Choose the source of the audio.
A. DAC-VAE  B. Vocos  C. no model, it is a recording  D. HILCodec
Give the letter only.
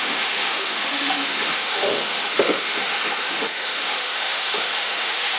A